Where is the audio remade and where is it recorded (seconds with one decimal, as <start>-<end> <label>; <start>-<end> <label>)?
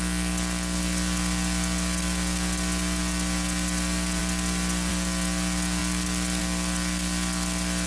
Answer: 0.0-4.2 recorded; 4.2-4.9 remade; 4.9-7.9 recorded